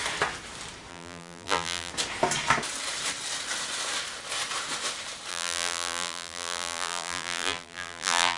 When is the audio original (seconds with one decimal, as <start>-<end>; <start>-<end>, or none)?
0.0-0.9; 1.9-5.3